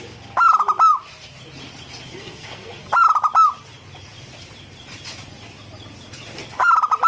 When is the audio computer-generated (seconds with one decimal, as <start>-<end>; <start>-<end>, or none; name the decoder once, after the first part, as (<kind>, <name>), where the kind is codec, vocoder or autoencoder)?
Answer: 2.1-2.8 (codec, SNAC)